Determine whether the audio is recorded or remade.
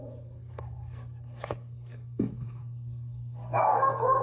remade